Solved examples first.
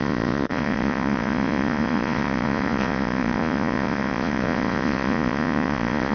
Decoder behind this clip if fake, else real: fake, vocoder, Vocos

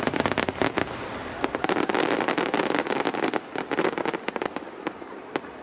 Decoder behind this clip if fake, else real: fake, vocoder, BigVGAN v2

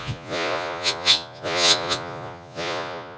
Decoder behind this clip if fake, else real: fake, vocoder, Vocos